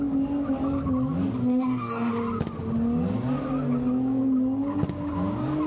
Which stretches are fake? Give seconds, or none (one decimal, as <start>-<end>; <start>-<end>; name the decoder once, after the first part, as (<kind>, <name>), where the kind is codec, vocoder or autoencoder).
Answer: 1.4-2.1 (codec, DAC)